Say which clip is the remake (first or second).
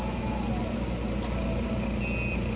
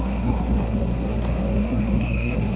second